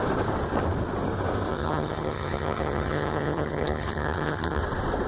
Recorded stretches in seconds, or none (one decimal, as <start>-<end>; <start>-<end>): 0.0-1.5; 4.6-5.1